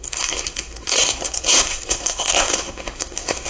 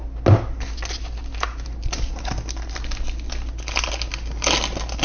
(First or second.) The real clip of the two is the second